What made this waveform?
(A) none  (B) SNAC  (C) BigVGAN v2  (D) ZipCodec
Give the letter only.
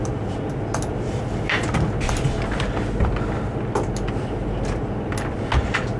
A